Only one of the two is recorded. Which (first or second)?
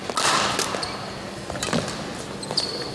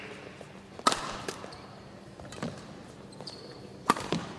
first